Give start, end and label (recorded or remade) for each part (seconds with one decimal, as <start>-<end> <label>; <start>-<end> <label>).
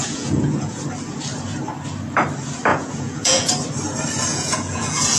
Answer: 0.0-0.8 remade; 0.8-2.7 recorded; 2.7-3.5 remade; 3.5-4.3 recorded; 4.3-5.2 remade